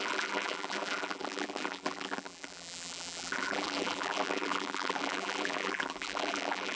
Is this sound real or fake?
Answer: fake